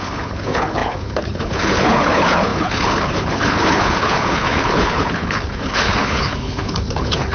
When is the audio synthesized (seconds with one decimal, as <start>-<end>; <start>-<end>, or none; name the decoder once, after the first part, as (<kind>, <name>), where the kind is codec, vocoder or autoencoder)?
0.0-7.3 (codec, HILCodec)

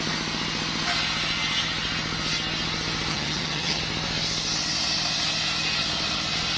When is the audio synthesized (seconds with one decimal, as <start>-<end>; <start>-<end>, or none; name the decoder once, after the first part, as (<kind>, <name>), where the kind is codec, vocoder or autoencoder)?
3.1-3.8 (vocoder, HiFi-GAN)

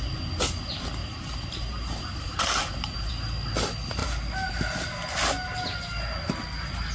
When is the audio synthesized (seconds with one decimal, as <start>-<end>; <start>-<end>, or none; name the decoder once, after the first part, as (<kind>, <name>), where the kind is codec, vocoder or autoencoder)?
1.0-3.1 (vocoder, BigVGAN v2)

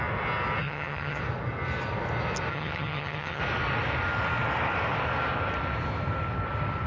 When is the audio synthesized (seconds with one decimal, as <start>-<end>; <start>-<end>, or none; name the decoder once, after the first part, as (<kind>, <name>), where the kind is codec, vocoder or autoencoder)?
0.6-1.2 (vocoder, HiFi-GAN); 2.5-3.4